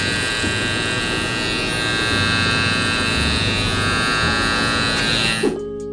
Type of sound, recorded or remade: recorded